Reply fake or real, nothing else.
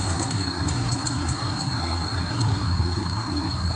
fake